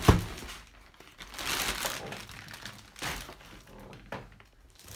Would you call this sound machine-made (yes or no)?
no